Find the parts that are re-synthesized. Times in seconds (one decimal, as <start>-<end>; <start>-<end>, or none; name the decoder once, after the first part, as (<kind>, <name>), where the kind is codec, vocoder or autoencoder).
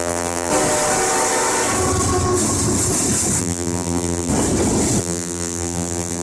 0.0-0.5 (vocoder, BigVGAN v2); 3.4-4.3; 5.0-6.2